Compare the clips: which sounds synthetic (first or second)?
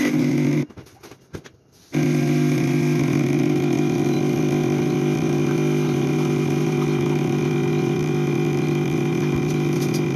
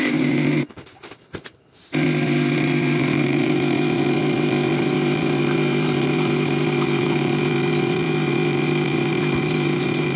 second